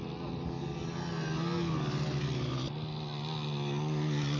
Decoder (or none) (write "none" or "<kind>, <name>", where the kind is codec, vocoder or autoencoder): none